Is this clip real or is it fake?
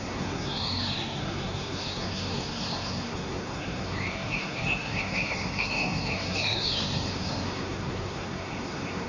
fake